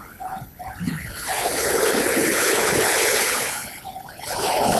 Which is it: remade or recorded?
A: remade